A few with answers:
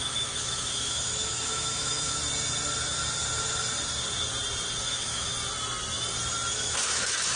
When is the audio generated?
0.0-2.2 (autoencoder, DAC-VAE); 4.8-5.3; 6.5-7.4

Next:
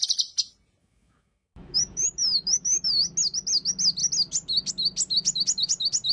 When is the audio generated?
0.8-3.0 (autoencoder, DAC-VAE)

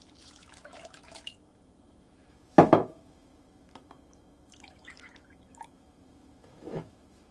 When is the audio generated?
0.0-7.3 (autoencoder, DAC-VAE)

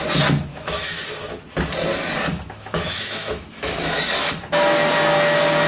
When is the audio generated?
0.5-1.0 (autoencoder, DAC-VAE); 2.3-4.0